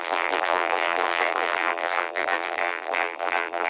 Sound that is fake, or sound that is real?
fake